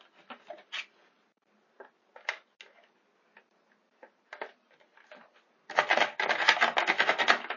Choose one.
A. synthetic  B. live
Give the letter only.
B